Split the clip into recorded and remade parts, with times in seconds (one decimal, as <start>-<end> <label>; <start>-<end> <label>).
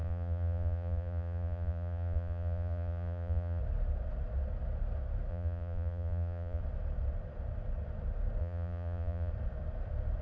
0.0-3.6 remade; 3.6-5.3 recorded; 5.3-6.6 remade; 6.6-8.4 recorded; 8.4-9.3 remade; 9.3-10.2 recorded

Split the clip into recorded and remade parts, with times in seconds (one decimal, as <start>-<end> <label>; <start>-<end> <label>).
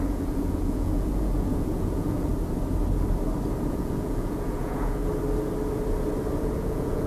0.0-2.3 remade; 2.3-3.7 recorded; 3.7-5.0 remade; 5.0-6.4 recorded; 6.4-7.1 remade